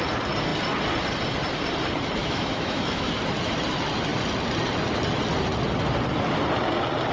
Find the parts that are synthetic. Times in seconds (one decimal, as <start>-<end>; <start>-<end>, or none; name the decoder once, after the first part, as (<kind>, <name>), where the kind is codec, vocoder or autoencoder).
2.2-3.2 (autoencoder, DAC-VAE)